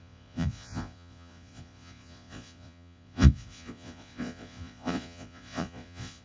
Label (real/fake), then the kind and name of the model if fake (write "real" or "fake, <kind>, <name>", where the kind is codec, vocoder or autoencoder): fake, vocoder, Vocos